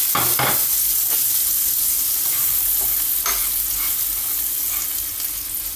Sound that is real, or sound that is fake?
real